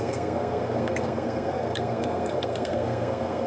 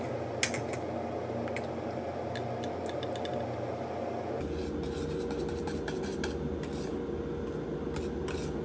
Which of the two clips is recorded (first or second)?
second